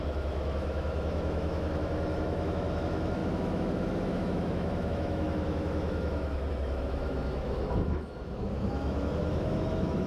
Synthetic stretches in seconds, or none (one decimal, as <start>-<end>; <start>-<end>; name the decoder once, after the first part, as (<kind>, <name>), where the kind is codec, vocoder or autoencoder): 0.0-10.1 (autoencoder, DAC-VAE)